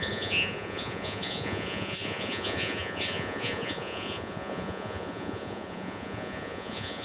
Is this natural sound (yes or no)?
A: no